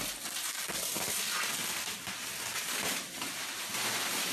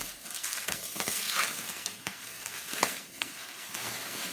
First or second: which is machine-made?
second